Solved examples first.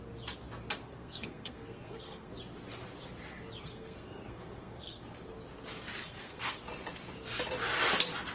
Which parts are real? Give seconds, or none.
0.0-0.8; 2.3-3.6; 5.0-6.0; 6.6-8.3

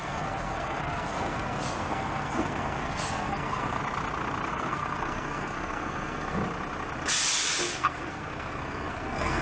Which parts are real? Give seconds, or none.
3.8-4.5; 6.4-7.6

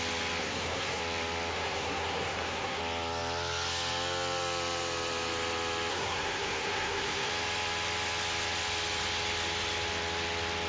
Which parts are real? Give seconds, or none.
0.0-0.4; 1.0-1.5; 2.8-5.9; 7.3-10.7

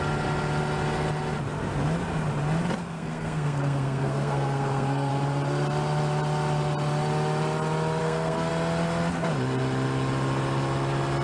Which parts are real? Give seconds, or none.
0.0-2.8; 5.1-8.0; 8.5-11.2

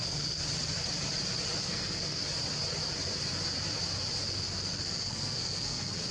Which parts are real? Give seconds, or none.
0.4-1.6; 2.2-4.2

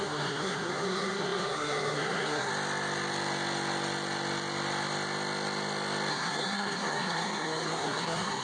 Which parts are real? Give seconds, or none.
2.5-6.1

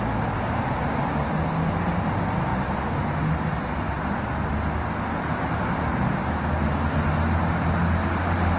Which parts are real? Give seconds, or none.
0.0-8.6